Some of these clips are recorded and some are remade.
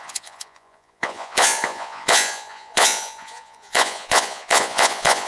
remade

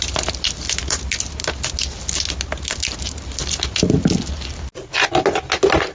recorded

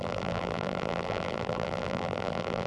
remade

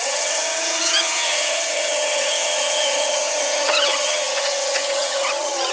remade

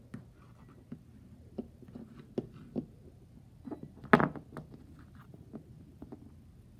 recorded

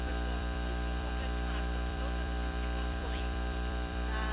remade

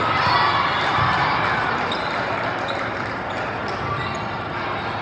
recorded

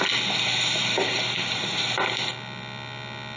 recorded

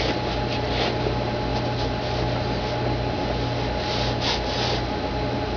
recorded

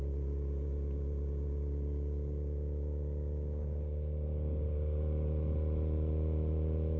recorded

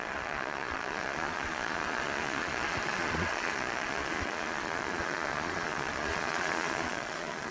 remade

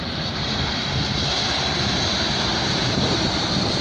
remade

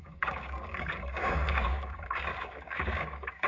remade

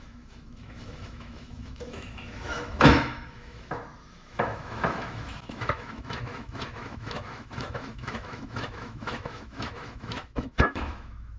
remade